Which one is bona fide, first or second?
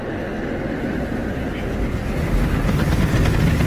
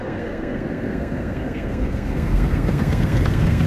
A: first